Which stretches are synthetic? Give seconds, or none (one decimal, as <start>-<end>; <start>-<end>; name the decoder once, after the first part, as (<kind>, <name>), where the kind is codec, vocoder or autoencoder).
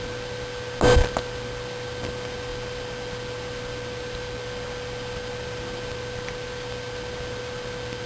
none